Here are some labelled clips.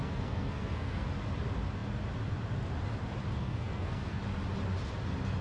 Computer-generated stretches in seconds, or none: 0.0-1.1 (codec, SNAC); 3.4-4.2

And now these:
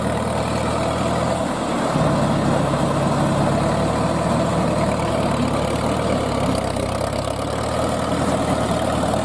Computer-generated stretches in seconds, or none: none

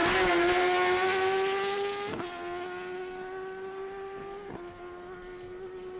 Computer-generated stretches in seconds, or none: none

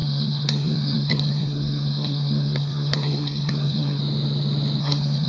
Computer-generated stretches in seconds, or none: 0.0-4.0 (codec, SNAC); 4.8-5.3

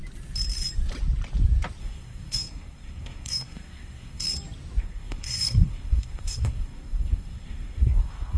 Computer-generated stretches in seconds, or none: 1.8-4.2 (codec, SNAC); 4.8-8.4